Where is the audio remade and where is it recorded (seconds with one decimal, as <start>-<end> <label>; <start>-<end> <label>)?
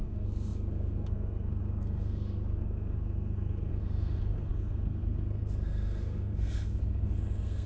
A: 0.0-7.7 remade